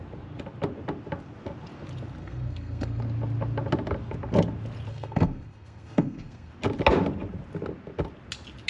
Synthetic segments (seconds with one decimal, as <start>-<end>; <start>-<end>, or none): 2.2-3.0; 4.9-6.5